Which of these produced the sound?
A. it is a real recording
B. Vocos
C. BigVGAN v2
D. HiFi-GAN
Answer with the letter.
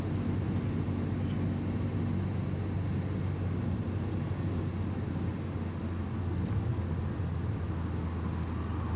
A